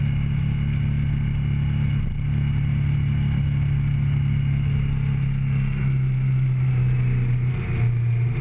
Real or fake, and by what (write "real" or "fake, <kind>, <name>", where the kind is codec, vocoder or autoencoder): real